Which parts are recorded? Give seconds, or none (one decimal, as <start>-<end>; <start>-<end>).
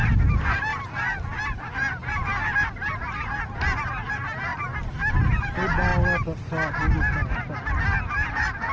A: 0.0-8.7